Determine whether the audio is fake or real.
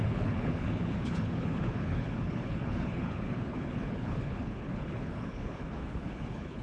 fake